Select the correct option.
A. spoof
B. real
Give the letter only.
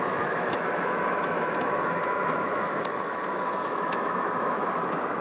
A